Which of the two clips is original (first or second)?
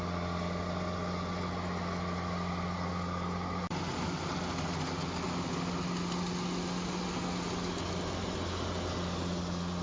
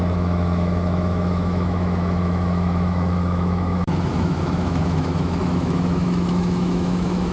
first